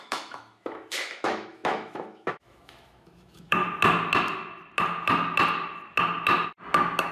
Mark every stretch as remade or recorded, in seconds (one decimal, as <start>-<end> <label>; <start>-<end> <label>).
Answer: 0.0-3.6 remade; 3.6-7.1 recorded